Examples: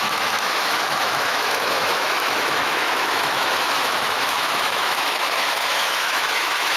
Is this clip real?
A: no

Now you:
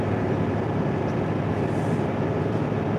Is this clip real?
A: yes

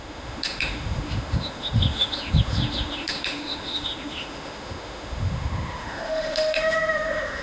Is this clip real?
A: no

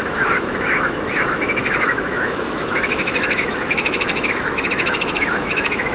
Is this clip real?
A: no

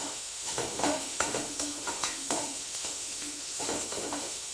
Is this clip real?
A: no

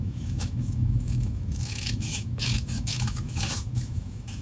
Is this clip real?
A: no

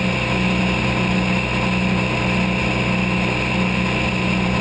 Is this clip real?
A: yes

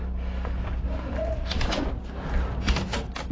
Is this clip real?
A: yes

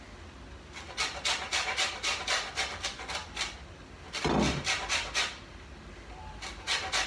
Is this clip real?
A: yes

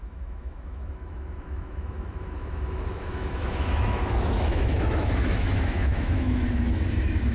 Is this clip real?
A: no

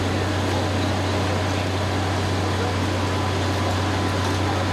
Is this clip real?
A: yes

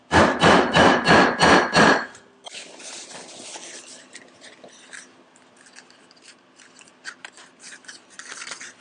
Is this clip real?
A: yes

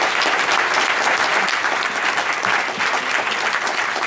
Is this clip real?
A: yes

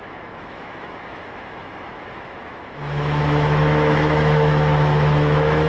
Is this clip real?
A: no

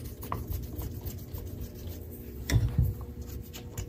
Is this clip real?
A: yes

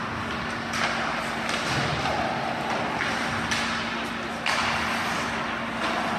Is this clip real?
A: yes